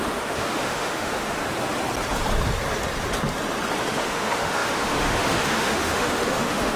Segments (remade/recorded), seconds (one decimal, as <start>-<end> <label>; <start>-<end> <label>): 0.0-1.4 remade; 1.4-4.0 recorded; 4.0-6.8 remade